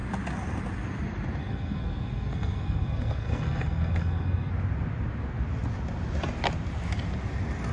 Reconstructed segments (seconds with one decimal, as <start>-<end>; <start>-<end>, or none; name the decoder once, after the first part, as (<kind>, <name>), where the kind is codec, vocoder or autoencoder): 1.4-4.5 (codec, SNAC)